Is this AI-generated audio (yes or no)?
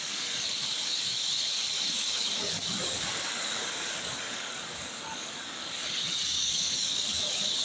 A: yes